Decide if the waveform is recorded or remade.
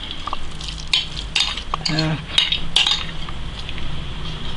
recorded